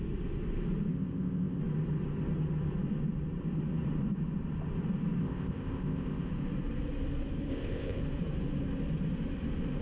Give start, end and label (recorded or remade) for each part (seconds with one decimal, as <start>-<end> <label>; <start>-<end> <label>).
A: 0.0-0.9 recorded; 0.9-1.6 remade; 1.6-5.2 recorded; 5.2-6.3 remade; 6.3-7.5 recorded; 7.5-8.0 remade; 8.0-9.8 recorded